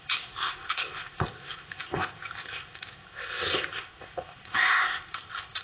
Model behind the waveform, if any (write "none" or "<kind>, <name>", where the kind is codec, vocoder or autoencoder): codec, ZipCodec